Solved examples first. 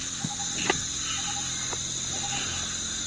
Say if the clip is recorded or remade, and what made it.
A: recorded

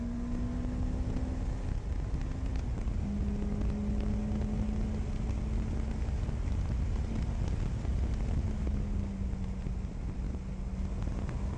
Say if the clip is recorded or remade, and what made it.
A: recorded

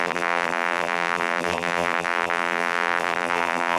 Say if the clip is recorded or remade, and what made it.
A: remade, vocoder, BigVGAN v2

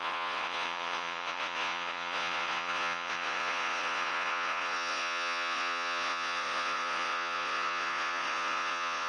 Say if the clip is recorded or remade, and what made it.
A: remade, vocoder, Vocos